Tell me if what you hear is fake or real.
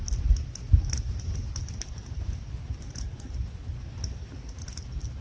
real